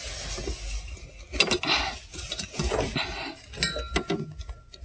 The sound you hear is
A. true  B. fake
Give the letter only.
A